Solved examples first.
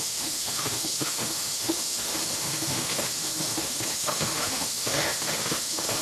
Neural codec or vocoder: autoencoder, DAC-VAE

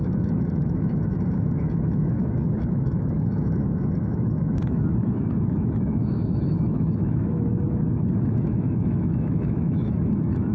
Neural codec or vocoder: autoencoder, DAC-VAE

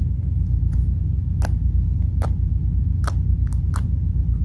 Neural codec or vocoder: none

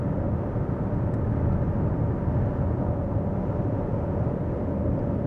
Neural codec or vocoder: none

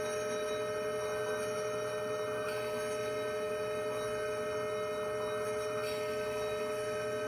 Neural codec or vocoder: none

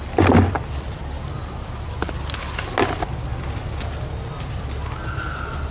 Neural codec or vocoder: none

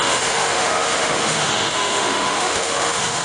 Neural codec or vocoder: autoencoder, DAC-VAE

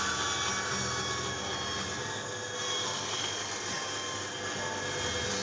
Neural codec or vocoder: none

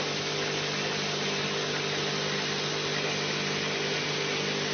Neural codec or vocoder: none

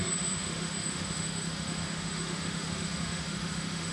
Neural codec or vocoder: autoencoder, DAC-VAE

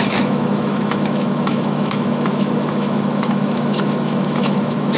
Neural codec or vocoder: autoencoder, DAC-VAE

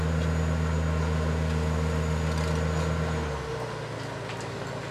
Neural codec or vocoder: none